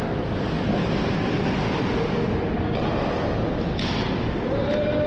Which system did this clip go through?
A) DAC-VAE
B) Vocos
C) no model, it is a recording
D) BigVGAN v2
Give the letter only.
C